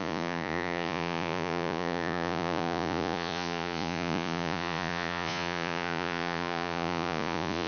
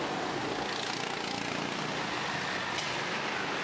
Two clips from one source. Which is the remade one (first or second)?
first